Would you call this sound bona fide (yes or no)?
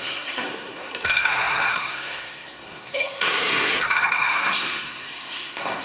no